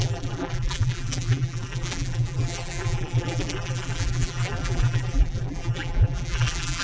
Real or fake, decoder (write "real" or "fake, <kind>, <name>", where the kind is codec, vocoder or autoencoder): fake, vocoder, BigVGAN v2